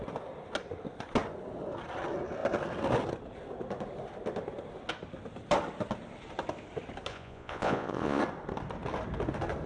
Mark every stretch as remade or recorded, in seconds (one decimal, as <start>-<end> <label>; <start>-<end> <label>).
0.0-7.1 recorded; 7.1-8.2 remade; 8.2-9.7 recorded